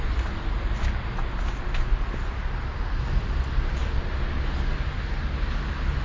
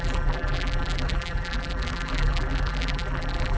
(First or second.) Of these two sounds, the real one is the first